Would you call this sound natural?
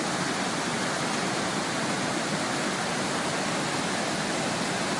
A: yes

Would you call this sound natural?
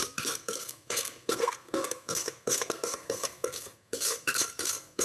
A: no